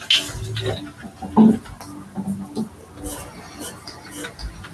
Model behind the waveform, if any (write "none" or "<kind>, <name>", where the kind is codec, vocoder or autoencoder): none